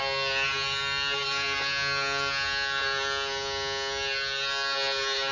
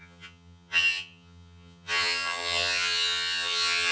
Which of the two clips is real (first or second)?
first